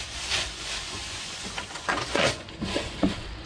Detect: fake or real fake